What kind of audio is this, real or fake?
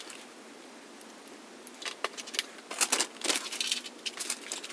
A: real